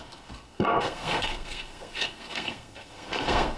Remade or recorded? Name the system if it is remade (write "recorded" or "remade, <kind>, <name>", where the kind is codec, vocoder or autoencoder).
remade, codec, SNAC